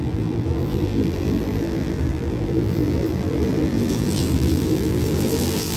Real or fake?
fake